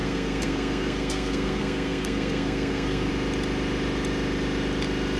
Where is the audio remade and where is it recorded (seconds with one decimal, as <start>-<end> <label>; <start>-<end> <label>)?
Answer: 0.0-3.1 remade; 3.1-5.2 recorded

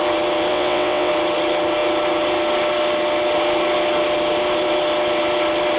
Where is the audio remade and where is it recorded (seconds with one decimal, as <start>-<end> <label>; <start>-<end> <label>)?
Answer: 0.0-0.5 recorded; 0.5-1.1 remade; 1.1-5.8 recorded